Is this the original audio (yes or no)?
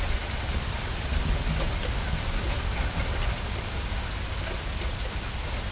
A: yes